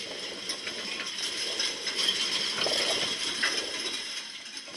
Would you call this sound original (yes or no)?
yes